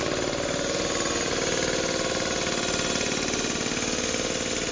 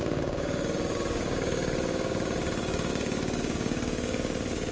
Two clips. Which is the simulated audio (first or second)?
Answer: second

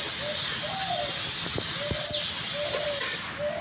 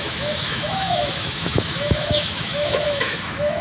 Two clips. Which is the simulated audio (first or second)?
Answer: second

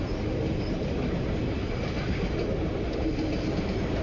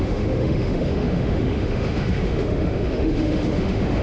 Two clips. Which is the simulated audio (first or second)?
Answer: second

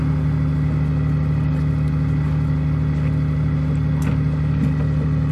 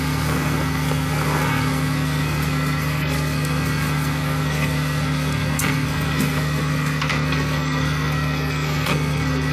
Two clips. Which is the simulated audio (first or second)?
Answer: second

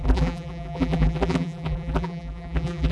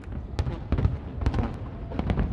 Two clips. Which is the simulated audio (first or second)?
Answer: first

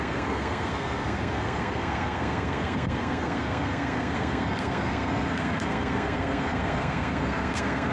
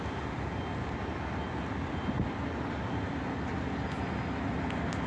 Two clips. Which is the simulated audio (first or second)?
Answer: first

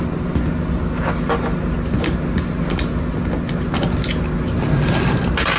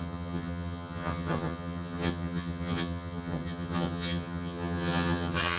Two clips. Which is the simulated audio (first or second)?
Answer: second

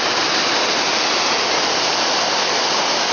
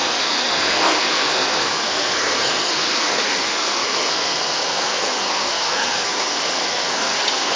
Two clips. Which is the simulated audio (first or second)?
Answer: second